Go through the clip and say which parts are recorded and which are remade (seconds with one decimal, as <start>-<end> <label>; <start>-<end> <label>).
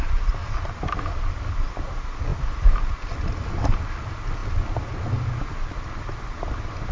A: 0.0-6.9 recorded